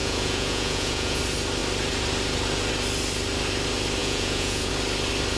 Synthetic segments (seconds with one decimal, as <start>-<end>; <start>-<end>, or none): 0.0-1.2; 4.0-4.7